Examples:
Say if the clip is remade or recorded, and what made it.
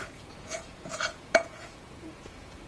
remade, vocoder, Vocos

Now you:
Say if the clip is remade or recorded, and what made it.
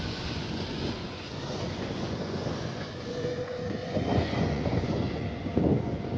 remade, vocoder, Vocos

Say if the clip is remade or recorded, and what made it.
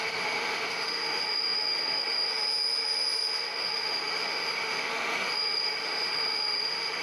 remade, autoencoder, DAC-VAE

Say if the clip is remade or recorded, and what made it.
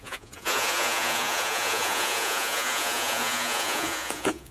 remade, vocoder, Vocos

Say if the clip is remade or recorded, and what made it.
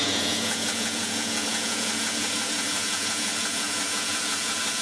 remade, vocoder, Vocos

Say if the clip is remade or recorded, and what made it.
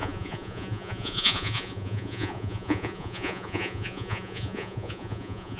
remade, vocoder, Vocos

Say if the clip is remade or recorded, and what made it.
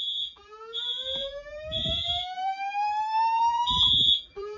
remade, vocoder, BigVGAN v2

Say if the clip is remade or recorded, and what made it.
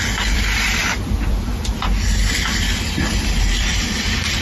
remade, vocoder, BigVGAN v2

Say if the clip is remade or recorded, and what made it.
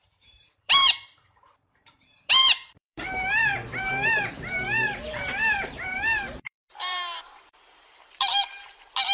remade, vocoder, BigVGAN v2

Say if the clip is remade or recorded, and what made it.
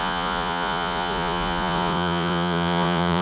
remade, vocoder, Vocos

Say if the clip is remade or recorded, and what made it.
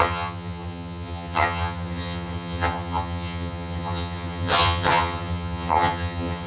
remade, vocoder, HiFi-GAN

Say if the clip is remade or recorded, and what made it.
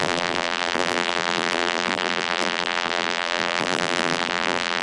remade, vocoder, BigVGAN v2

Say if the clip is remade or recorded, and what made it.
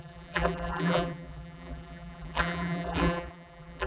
remade, vocoder, BigVGAN v2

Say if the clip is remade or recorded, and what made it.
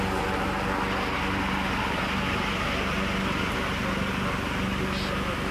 recorded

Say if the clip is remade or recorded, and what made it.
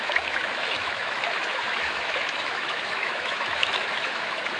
remade, autoencoder, DAC-VAE